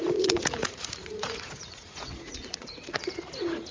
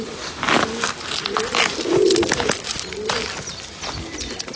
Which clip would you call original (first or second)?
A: second